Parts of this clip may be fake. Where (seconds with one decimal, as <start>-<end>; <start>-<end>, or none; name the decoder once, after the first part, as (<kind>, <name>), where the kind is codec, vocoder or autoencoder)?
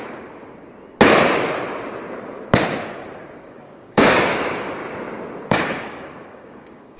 3.4-4.8 (codec, DAC); 5.5-7.0